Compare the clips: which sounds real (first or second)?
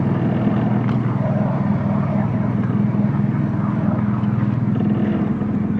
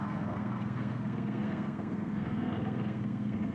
first